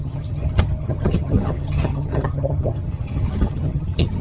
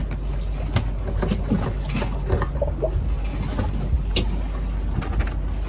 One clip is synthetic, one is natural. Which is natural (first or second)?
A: second